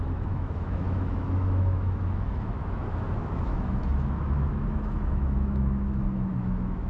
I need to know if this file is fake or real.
fake